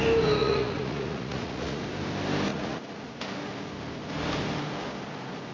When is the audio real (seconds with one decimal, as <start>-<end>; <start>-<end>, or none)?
0.0-0.4; 1.8-2.5; 3.2-5.5